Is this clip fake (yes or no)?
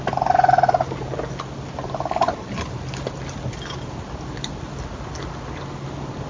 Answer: no